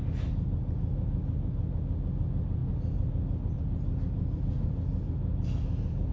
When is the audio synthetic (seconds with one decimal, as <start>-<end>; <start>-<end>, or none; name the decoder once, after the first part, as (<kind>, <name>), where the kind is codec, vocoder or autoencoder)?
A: none